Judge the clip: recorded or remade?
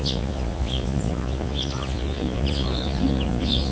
remade